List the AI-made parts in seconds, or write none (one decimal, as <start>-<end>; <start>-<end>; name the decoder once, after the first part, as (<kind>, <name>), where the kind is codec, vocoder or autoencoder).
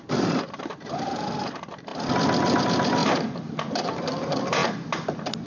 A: 0.0-1.9 (vocoder, BigVGAN v2); 2.6-4.6